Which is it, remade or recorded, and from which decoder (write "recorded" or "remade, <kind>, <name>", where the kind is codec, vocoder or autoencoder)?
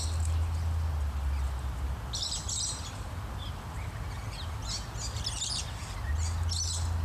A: recorded